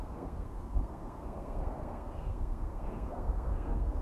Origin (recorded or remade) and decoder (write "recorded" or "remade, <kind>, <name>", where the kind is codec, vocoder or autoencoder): remade, codec, SNAC